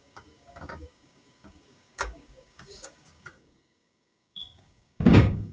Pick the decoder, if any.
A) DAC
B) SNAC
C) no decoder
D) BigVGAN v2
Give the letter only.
A